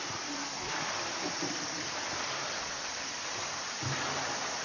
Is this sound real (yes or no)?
yes